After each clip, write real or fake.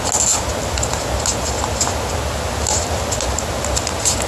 real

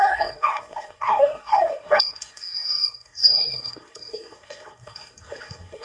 fake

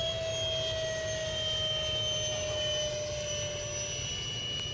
real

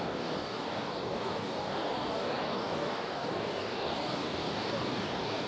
fake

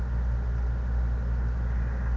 real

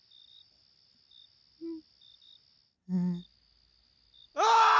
real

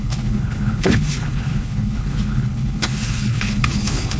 fake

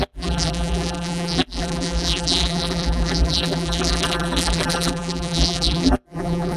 fake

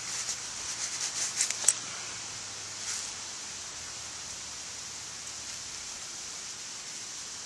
real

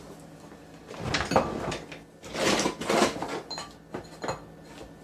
real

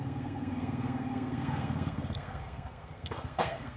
fake